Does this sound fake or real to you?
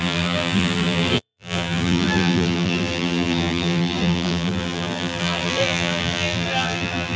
fake